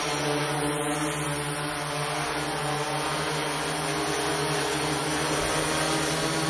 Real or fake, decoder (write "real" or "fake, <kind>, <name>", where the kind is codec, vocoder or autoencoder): real